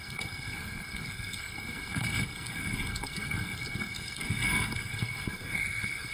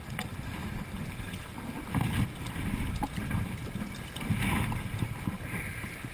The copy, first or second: first